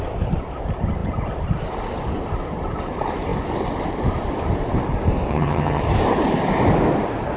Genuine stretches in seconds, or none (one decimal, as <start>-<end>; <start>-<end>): 0.0-5.3; 5.8-7.4